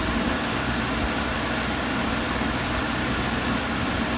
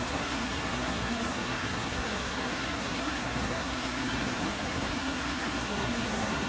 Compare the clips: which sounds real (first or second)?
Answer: first